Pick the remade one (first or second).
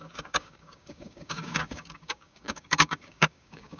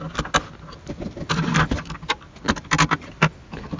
first